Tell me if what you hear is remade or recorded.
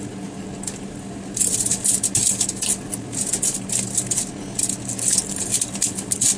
recorded